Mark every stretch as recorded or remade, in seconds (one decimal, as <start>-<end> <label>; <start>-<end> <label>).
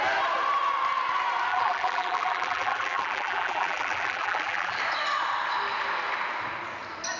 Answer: 0.0-1.5 recorded; 1.5-4.8 remade; 4.8-7.2 recorded